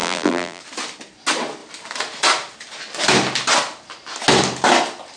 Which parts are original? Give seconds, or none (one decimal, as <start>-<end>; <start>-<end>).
0.6-5.2